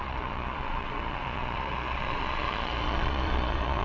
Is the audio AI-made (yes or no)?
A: yes